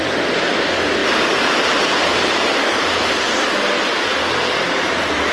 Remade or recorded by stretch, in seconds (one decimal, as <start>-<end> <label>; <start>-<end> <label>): 0.0-5.3 recorded